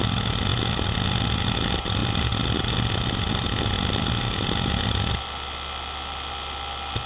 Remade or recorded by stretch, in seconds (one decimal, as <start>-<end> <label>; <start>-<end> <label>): 0.0-7.1 recorded